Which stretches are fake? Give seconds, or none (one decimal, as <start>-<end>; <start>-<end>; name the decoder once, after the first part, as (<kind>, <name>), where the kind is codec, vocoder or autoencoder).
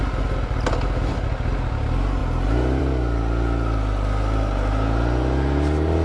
none